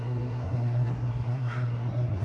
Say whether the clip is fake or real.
fake